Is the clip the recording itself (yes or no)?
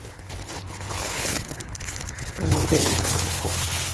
no